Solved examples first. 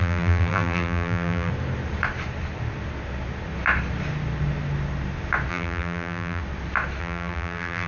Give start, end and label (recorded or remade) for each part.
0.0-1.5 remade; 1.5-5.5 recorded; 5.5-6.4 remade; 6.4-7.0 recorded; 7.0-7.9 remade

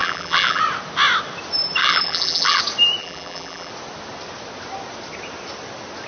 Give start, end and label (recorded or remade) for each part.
0.0-0.6 remade; 0.6-1.8 recorded; 1.8-2.6 remade; 2.6-3.0 recorded; 3.0-3.7 remade; 3.7-6.1 recorded

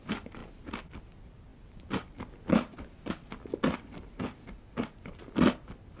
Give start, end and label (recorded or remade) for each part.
0.0-6.0 recorded

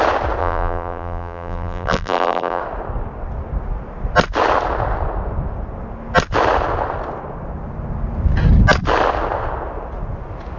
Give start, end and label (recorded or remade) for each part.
0.0-0.4 recorded; 0.4-2.6 remade; 2.6-10.6 recorded